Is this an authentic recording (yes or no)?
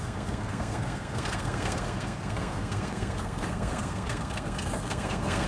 no